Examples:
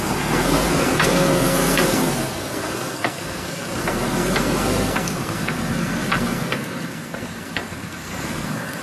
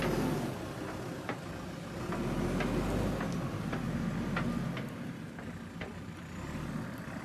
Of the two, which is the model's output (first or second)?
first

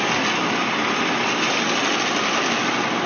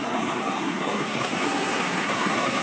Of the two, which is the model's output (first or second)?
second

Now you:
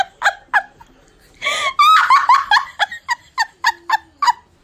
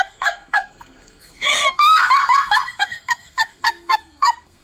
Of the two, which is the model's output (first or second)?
second